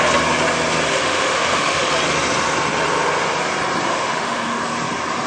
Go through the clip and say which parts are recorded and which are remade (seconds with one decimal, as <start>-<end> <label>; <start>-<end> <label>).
0.0-0.9 recorded; 0.9-1.9 remade; 1.9-3.9 recorded; 3.9-4.6 remade; 4.6-5.3 recorded